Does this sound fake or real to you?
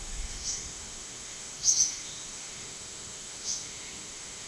fake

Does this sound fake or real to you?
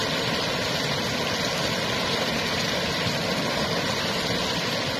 real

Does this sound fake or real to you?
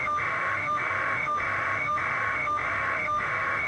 fake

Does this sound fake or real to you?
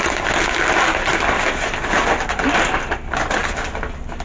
real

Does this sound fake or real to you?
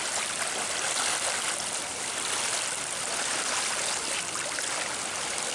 real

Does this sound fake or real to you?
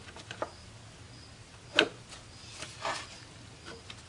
real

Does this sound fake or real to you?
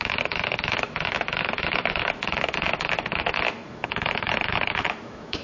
fake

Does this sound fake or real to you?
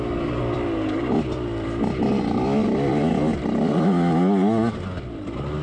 real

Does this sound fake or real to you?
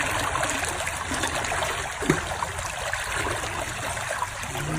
real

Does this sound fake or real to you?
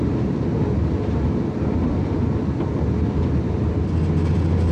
real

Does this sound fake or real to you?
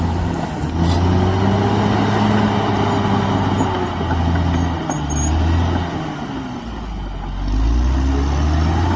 real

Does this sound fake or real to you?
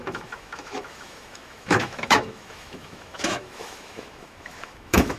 fake